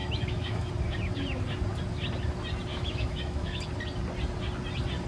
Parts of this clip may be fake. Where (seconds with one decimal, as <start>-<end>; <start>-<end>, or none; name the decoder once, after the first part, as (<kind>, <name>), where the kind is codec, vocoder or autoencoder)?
0.0-0.7 (autoencoder, DAC-VAE); 2.7-3.6